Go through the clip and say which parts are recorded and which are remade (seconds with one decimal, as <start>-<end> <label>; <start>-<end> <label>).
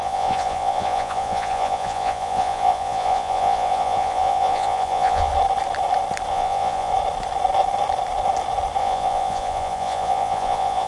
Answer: 0.0-5.3 remade; 5.3-6.3 recorded; 6.3-6.9 remade; 6.9-8.8 recorded; 8.8-10.9 remade